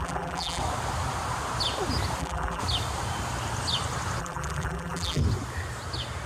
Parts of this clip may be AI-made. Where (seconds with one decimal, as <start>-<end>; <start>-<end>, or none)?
0.0-0.6; 2.2-2.6; 4.2-5.2